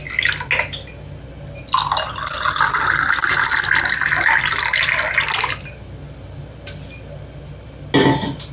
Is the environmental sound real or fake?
real